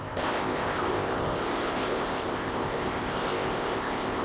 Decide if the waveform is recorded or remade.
remade